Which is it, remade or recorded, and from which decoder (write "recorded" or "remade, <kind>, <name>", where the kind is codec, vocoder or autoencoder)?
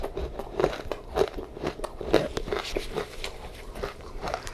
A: remade, vocoder, BigVGAN v2